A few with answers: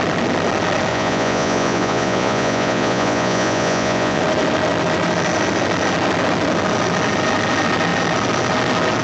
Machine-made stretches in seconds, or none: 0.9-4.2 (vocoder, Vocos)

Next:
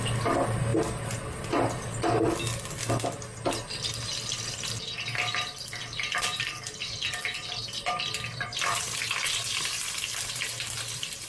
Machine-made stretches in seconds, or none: none

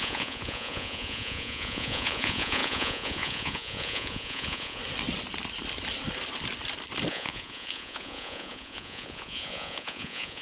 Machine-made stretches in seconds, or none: 0.0-4.8 (vocoder, Vocos); 7.1-10.4